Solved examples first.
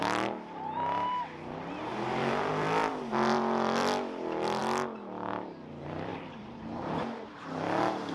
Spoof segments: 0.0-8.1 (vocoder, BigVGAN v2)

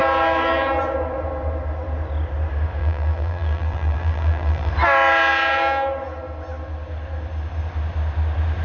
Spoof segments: 2.8-4.7 (vocoder, BigVGAN v2)

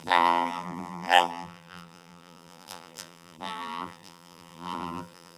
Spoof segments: 0.0-5.4 (vocoder, BigVGAN v2)